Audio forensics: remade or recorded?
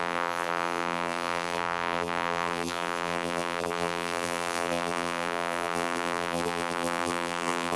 remade